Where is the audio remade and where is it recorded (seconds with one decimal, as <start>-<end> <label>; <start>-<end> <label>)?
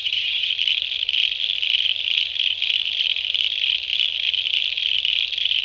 0.0-0.5 remade; 0.5-5.6 recorded